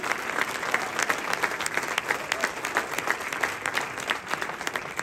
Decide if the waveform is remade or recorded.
recorded